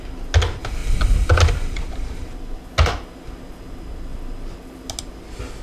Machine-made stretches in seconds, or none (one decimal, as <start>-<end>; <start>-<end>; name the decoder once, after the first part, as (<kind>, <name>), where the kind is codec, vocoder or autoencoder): none